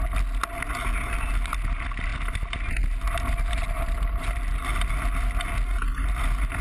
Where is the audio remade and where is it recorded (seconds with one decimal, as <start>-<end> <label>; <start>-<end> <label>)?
0.0-6.6 recorded